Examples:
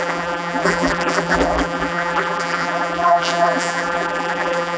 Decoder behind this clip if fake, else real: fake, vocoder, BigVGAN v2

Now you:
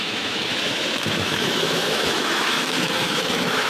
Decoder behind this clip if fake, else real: fake, autoencoder, DAC-VAE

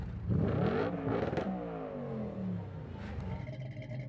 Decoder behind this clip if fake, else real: real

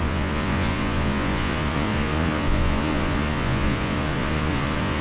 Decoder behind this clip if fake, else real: fake, vocoder, Vocos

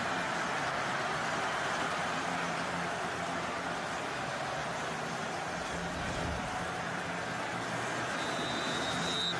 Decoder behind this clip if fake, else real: real